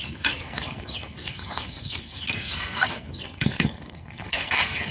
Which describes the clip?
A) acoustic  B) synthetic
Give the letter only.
B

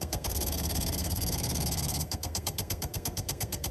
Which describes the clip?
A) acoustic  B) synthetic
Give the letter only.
B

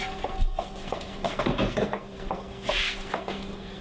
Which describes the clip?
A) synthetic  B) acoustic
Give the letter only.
A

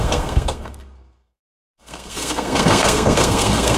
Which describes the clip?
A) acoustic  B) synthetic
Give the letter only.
B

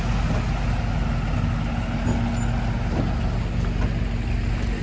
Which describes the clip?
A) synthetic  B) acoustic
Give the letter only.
B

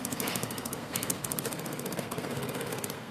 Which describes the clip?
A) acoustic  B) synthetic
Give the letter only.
B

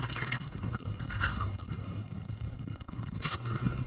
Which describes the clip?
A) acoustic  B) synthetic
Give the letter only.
B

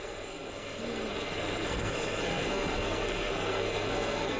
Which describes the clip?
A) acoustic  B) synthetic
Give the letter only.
B